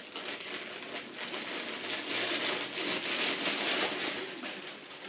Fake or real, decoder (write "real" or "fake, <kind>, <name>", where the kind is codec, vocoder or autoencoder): real